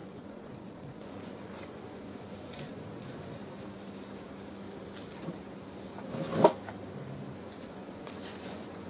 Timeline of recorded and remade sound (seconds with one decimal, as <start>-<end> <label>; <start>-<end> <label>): 0.0-3.4 remade; 3.4-7.4 recorded; 7.4-8.9 remade